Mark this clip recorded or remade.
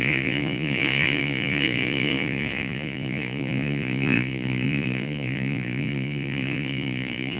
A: remade